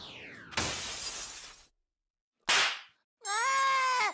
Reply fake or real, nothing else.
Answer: real